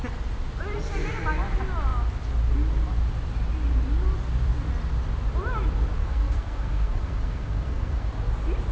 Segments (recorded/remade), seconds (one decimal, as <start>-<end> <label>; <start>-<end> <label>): 0.0-6.0 recorded; 6.0-8.1 remade; 8.1-8.7 recorded